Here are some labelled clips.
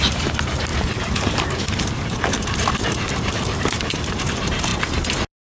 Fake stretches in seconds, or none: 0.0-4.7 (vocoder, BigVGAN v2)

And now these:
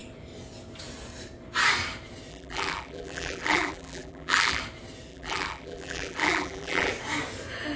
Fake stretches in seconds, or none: 2.3-4.6 (vocoder, BigVGAN v2); 5.1-6.9

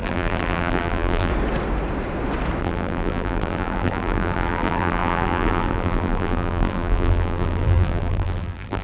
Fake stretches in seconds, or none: 0.0-1.3 (vocoder, BigVGAN v2); 2.6-8.8